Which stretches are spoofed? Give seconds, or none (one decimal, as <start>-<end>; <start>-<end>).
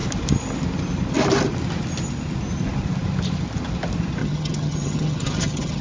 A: 4.2-5.8